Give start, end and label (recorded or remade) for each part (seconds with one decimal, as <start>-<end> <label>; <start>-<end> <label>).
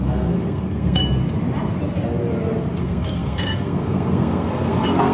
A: 0.0-1.0 remade; 1.0-2.8 recorded; 2.8-5.1 remade